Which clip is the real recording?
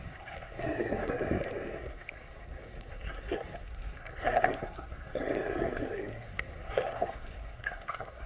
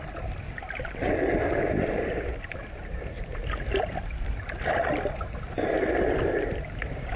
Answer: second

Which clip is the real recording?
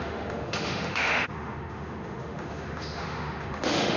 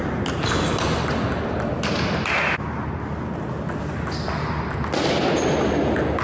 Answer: second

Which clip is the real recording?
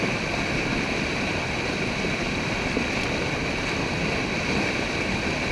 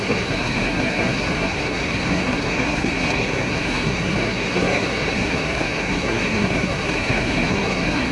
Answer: first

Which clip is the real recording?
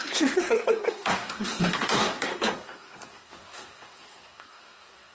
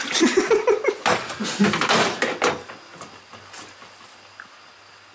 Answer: second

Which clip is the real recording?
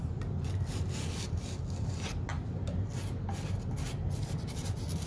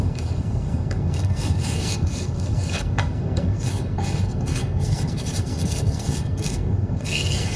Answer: first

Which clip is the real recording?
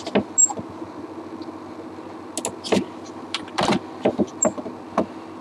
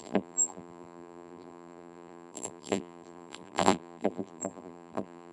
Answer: first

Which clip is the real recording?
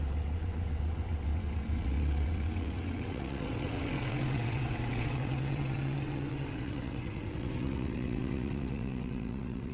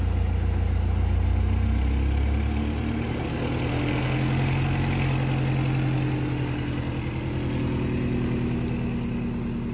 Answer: second